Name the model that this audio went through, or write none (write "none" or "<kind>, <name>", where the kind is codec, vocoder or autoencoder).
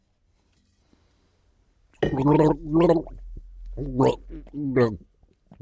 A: none